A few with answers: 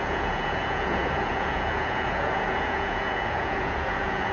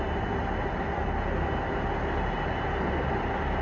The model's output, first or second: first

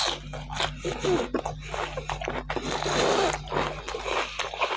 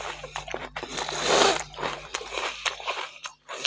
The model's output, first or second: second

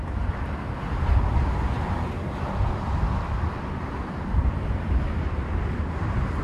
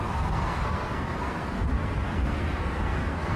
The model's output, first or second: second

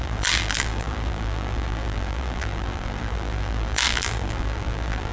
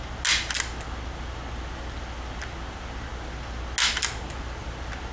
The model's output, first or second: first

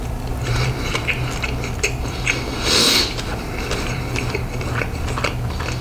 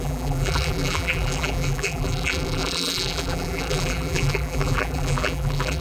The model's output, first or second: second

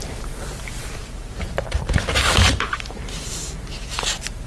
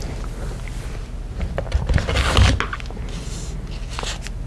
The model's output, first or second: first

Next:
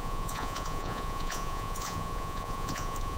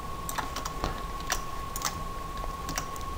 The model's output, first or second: first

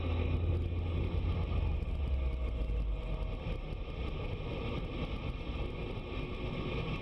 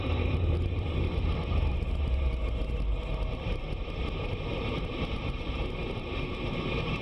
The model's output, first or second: second